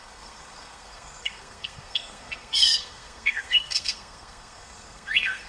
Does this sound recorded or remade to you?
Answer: remade